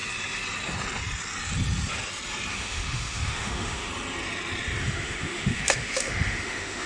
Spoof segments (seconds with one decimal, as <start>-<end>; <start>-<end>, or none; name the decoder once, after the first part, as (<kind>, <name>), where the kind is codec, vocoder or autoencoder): 2.5-3.9 (autoencoder, DAC-VAE); 4.8-6.9